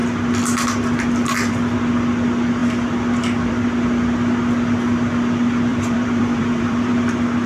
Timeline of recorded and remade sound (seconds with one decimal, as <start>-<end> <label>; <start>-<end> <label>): 0.0-5.7 recorded; 5.7-7.1 remade; 7.1-7.5 recorded